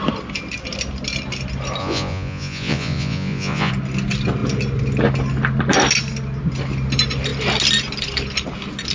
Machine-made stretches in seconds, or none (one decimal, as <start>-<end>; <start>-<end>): 1.8-3.7